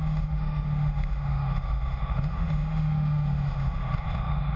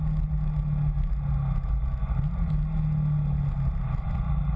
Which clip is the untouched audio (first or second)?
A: second